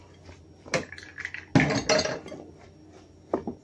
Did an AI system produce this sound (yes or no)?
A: no